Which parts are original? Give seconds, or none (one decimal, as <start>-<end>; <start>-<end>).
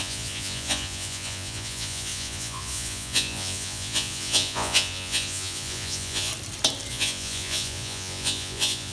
6.3-6.9